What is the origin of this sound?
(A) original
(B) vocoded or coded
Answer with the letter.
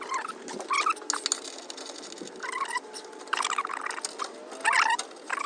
A